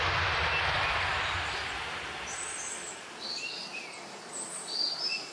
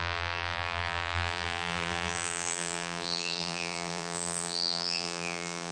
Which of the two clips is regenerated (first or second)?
second